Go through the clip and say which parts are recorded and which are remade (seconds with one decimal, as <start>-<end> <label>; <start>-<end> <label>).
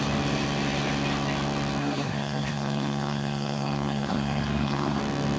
0.0-1.8 recorded; 1.8-5.0 remade; 5.0-5.4 recorded